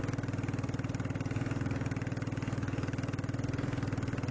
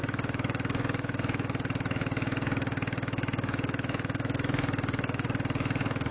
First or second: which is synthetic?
second